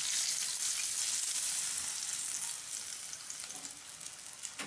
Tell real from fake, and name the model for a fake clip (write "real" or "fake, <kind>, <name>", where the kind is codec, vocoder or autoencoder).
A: real